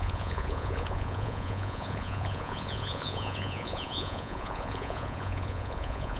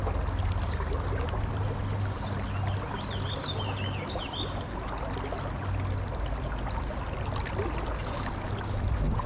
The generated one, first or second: first